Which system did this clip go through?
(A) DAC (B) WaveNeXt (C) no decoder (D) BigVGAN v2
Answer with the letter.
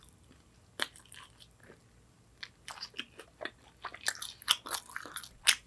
C